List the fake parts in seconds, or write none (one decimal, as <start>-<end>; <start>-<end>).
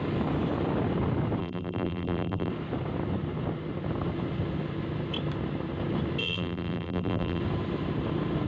1.4-2.5; 6.2-7.4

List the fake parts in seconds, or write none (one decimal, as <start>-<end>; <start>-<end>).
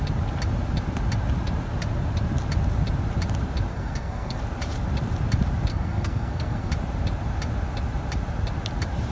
3.7-4.4; 5.7-6.7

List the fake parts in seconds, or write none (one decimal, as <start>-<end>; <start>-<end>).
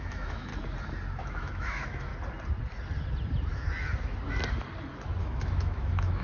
0.0-0.5; 1.2-2.1; 5.2-6.2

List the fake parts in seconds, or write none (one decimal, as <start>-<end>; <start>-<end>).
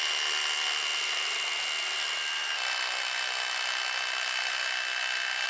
none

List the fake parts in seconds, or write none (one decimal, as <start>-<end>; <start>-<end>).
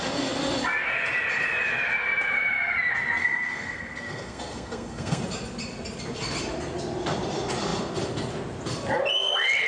3.2-5.2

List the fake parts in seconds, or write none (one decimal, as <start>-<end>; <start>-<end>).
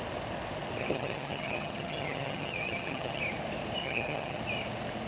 0.8-3.2; 3.8-4.4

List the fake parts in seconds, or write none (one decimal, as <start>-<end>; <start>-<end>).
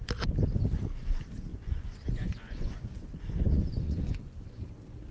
1.5-4.6